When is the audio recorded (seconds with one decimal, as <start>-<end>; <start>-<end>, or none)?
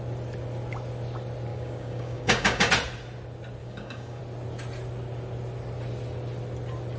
0.0-1.5; 2.7-3.6; 4.2-7.0